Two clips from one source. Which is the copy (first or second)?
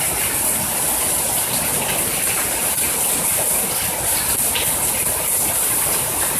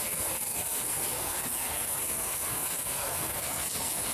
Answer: second